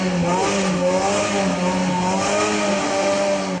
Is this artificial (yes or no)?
no